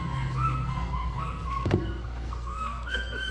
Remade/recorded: remade